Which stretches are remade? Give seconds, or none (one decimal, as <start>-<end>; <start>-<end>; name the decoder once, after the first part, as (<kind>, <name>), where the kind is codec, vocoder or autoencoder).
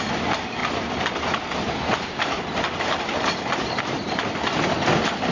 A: 0.0-5.3 (vocoder, BigVGAN v2)